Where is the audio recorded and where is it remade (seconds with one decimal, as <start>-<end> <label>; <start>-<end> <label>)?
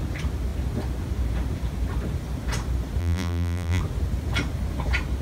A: 0.0-3.0 recorded; 3.0-3.8 remade; 3.8-5.2 recorded